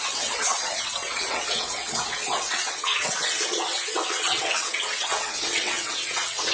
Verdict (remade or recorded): remade